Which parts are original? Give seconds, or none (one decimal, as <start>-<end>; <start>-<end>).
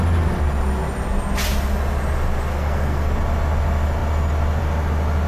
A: 0.0-2.5; 3.1-5.3